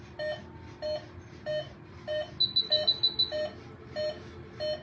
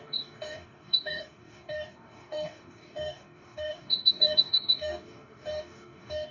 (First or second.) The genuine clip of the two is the first